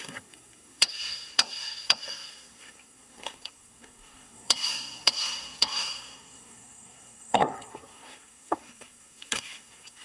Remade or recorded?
remade